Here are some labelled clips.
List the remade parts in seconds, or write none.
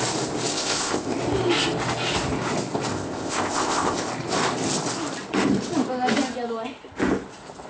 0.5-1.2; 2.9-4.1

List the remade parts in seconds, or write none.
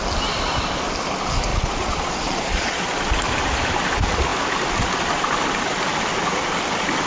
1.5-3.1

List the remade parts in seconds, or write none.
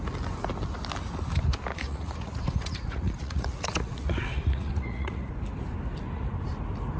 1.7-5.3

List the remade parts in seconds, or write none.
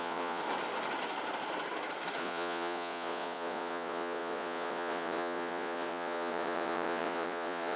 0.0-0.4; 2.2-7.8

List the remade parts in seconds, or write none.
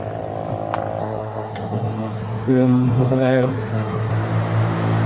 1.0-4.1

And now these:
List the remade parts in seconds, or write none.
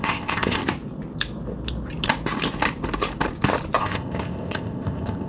0.0-0.6; 3.8-5.3